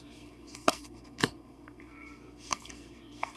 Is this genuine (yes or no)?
no